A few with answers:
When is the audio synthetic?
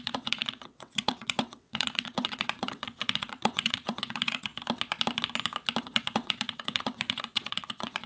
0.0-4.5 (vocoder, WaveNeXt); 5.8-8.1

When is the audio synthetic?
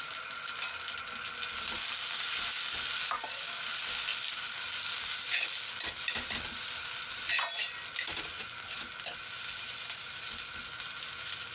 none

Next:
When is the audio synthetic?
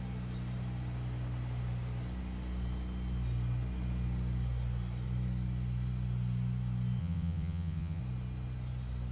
7.0-8.0 (vocoder, WaveNeXt)